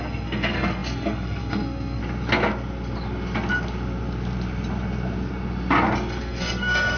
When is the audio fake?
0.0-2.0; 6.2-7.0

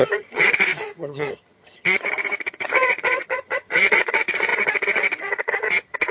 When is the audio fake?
0.0-6.1